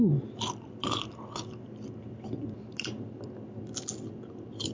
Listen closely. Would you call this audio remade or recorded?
recorded